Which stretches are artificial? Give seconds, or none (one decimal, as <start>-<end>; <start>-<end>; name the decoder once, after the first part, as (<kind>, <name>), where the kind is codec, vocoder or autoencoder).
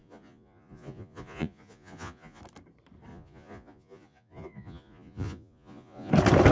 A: 0.0-2.4 (vocoder, Vocos); 3.1-6.1